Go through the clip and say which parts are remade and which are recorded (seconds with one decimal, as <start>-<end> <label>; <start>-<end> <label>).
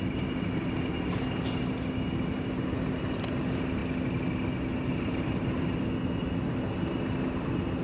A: 0.0-7.8 recorded